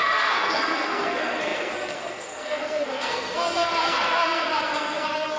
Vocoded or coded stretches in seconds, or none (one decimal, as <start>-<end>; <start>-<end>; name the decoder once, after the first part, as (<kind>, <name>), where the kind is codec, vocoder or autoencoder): 0.0-5.4 (codec, SNAC)